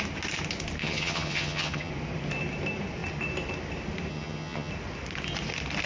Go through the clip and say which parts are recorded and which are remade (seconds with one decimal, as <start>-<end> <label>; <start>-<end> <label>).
0.0-0.8 recorded; 0.8-1.9 remade; 1.9-4.1 recorded; 4.1-4.7 remade; 4.7-5.9 recorded